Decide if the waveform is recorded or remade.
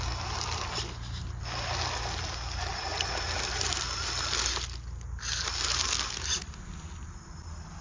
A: recorded